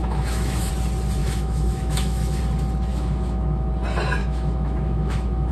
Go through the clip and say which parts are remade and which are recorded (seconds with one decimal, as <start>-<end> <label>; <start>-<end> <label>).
0.0-0.7 remade; 0.7-1.2 recorded; 1.2-2.4 remade; 2.4-2.9 recorded; 2.9-3.7 remade; 3.7-4.2 recorded; 4.2-5.5 remade